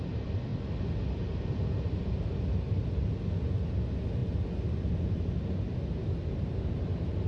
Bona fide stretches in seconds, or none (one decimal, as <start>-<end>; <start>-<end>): 0.0-7.3